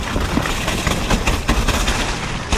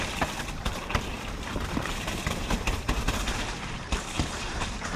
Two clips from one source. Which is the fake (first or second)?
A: second